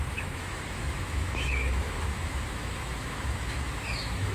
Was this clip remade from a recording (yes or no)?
yes